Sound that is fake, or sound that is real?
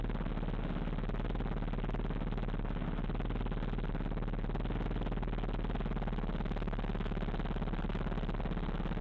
real